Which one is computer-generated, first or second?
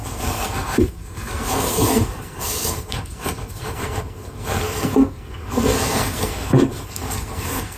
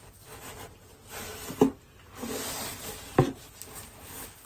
first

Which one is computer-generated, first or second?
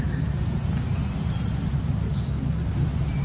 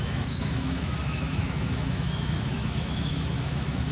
second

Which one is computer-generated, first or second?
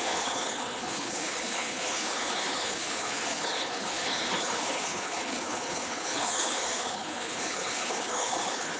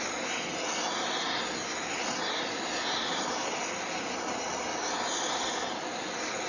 first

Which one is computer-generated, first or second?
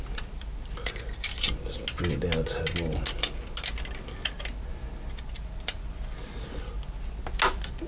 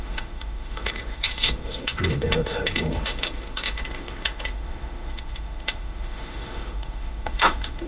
second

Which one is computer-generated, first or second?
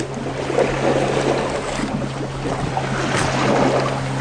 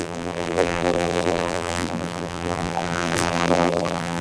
second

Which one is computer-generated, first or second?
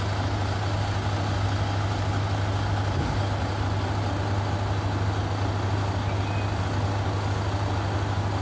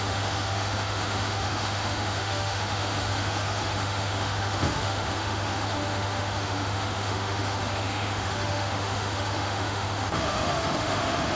second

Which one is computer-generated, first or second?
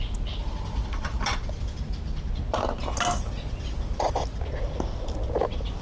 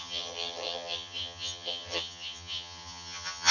second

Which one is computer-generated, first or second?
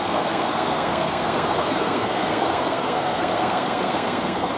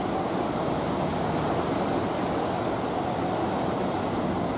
first